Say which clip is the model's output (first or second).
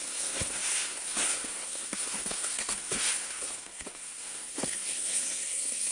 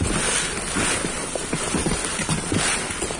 first